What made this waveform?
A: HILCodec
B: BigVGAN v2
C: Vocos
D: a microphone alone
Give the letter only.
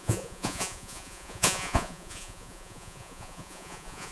C